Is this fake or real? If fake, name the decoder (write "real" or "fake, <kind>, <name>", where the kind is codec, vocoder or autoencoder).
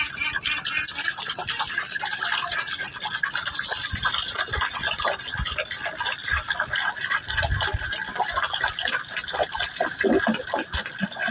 real